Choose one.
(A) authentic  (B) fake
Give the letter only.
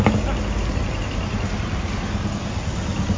A